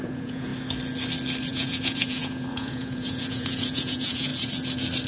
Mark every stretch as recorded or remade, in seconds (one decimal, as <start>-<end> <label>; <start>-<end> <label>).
0.0-0.5 remade; 0.5-1.5 recorded; 1.5-4.3 remade; 4.3-5.1 recorded